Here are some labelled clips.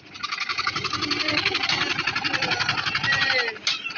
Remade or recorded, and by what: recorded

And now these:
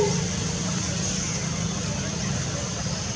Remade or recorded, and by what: recorded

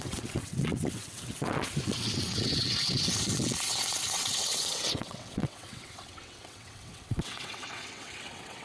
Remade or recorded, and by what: remade, vocoder, WaveNeXt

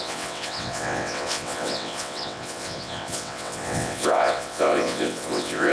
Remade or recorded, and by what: remade, vocoder, WaveNeXt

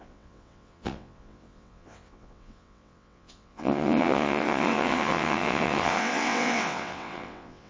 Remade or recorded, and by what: remade, vocoder, WaveNeXt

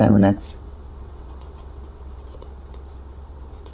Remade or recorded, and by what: remade, vocoder, WaveNeXt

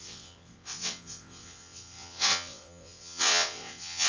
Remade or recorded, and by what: remade, vocoder, WaveNeXt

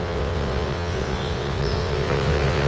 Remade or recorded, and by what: remade, vocoder, WaveNeXt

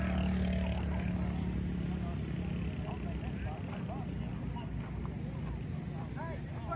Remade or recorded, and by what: recorded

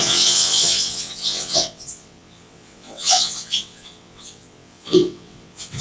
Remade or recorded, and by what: remade, vocoder, WaveNeXt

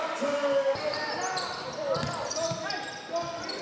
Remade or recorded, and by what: recorded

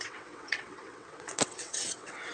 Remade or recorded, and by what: remade, vocoder, WaveNeXt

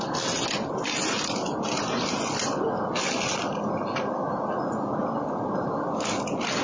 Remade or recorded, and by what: recorded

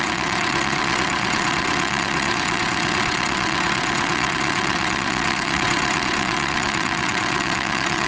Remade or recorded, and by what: remade, vocoder, WaveNeXt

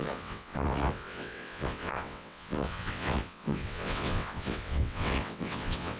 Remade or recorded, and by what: remade, vocoder, WaveNeXt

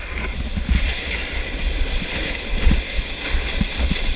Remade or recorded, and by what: recorded